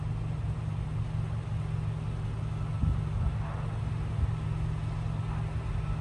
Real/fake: real